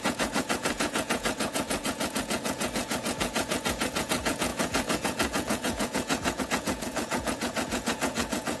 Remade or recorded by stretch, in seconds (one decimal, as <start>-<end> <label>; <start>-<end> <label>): 0.0-8.6 remade